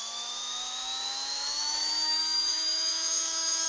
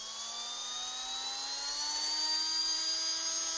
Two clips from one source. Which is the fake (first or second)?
first